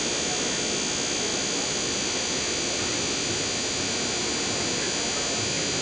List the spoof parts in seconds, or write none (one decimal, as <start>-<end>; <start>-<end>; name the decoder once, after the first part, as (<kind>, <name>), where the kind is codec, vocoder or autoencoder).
1.3-4.8 (vocoder, BigVGAN v2)